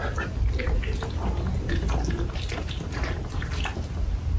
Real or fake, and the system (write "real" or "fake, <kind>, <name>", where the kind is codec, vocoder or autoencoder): real